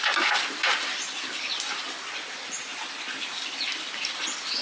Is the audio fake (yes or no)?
no